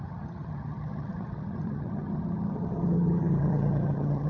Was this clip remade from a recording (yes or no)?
yes